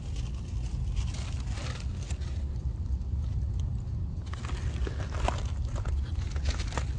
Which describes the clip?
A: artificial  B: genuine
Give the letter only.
B